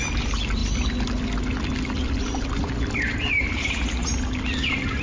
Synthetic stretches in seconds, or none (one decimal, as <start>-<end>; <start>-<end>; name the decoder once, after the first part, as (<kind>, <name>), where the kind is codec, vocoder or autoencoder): none